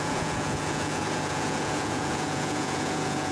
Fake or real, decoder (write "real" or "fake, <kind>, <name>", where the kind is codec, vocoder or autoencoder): fake, vocoder, Vocos